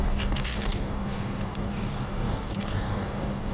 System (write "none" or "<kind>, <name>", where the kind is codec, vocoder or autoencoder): codec, DAC